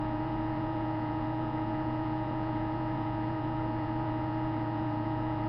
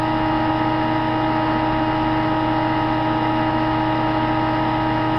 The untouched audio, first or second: second